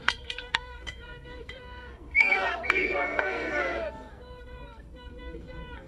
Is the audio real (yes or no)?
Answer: no